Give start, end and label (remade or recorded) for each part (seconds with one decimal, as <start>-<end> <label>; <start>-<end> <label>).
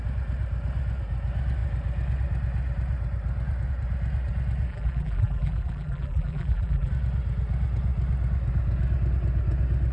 0.0-4.7 recorded; 4.7-6.9 remade; 6.9-9.9 recorded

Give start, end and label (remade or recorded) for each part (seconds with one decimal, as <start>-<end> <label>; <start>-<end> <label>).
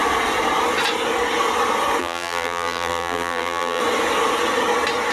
0.0-2.0 recorded; 2.0-3.8 remade; 3.8-5.1 recorded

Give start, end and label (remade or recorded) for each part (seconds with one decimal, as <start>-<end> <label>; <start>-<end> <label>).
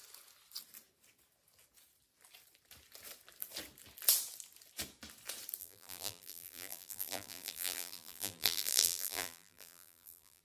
0.0-5.6 recorded; 5.6-10.4 remade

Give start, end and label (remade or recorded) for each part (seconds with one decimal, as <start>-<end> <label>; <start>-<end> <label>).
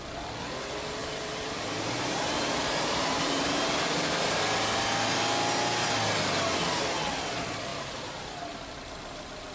0.0-1.0 recorded; 1.0-4.4 remade; 4.4-7.7 recorded; 7.7-8.6 remade; 8.6-9.5 recorded